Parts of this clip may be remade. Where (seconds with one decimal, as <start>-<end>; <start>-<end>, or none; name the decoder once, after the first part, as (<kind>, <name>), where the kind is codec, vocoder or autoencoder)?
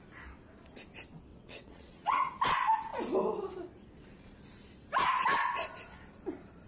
1.3-2.3 (vocoder, WaveNeXt)